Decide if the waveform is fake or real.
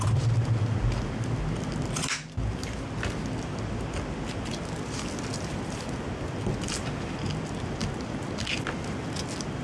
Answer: real